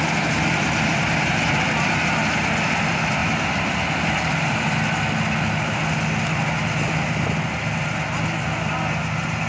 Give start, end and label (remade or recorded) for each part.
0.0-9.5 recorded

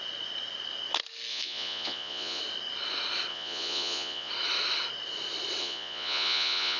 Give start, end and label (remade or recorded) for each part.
0.0-1.3 recorded; 1.3-2.4 remade; 2.4-3.3 recorded; 3.3-4.3 remade; 4.3-5.6 recorded; 5.6-6.8 remade